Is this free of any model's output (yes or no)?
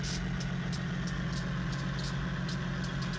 yes